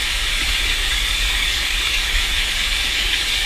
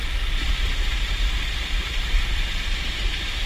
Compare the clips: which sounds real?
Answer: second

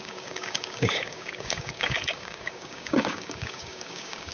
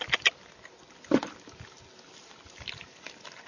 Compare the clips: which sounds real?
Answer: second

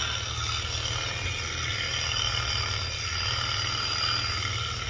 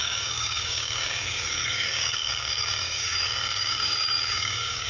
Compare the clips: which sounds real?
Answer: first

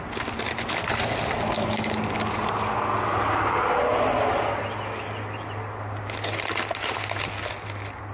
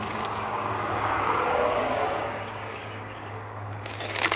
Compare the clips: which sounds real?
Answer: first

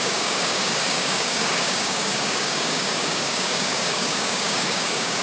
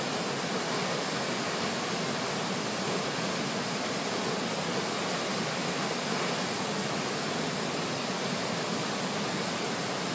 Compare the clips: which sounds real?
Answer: second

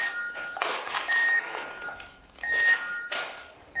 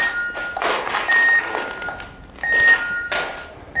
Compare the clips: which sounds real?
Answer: second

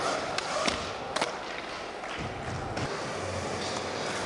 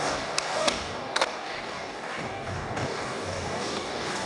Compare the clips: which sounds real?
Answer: first